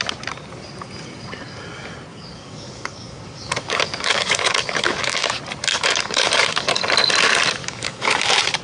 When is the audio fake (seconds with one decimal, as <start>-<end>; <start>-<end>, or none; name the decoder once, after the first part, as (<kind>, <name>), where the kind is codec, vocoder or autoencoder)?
2.1-5.3 (codec, DAC); 5.7-6.8; 7.6-8.6